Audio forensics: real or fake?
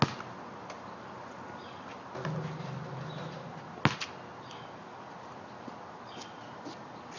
real